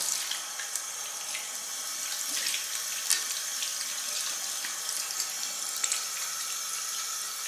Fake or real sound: real